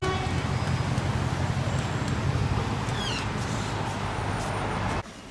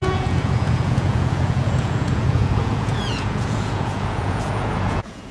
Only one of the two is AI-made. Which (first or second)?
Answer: second